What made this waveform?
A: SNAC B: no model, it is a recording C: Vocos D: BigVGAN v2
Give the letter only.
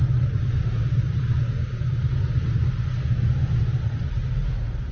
D